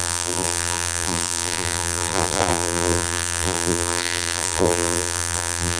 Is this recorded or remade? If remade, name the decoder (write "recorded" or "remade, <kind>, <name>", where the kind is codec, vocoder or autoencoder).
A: remade, vocoder, BigVGAN v2